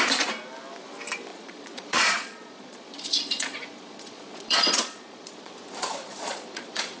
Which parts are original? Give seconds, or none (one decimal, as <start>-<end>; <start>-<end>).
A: 0.0-1.3; 5.5-6.0